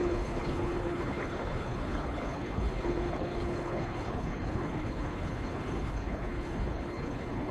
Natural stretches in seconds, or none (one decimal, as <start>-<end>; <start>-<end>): none